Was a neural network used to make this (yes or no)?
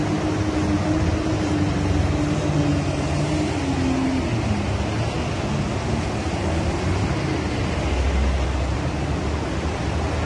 no